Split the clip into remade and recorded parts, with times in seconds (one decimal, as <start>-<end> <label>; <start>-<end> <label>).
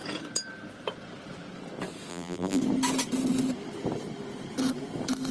0.0-2.1 recorded; 2.1-2.6 remade; 2.6-5.3 recorded